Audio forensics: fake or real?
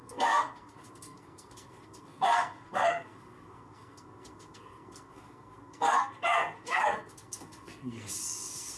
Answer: fake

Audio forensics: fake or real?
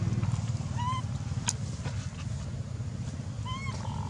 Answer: real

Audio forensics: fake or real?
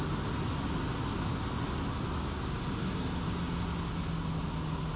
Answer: real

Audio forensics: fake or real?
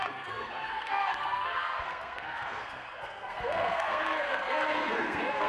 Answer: fake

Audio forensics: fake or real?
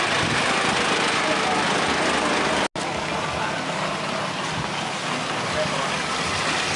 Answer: real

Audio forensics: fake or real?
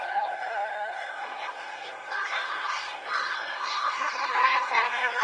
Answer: fake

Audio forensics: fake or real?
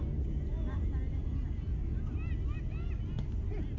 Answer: real